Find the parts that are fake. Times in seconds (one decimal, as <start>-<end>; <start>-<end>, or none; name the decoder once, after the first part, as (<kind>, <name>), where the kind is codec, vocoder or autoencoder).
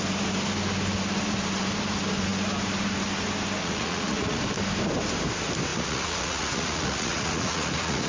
3.6-4.4 (vocoder, Vocos); 5.7-8.1